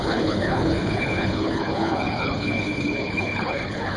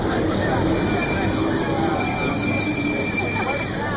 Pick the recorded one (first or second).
second